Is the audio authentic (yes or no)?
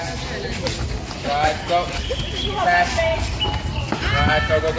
yes